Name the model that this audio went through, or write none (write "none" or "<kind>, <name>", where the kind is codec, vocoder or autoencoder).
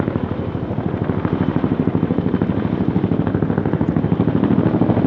none